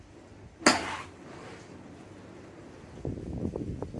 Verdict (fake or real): real